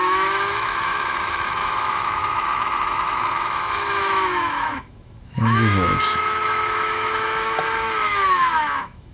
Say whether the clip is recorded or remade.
remade